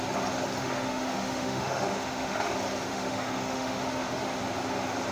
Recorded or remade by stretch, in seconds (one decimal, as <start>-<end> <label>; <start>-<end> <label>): 0.0-0.6 recorded; 0.6-2.5 remade; 2.5-2.9 recorded; 2.9-4.4 remade; 4.4-5.1 recorded